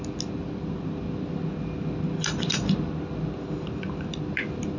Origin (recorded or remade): recorded